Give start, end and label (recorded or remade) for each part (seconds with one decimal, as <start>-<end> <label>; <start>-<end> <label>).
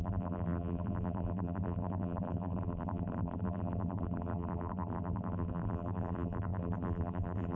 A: 0.0-7.6 remade